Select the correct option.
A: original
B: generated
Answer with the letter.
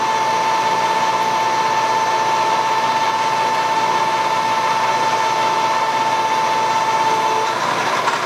A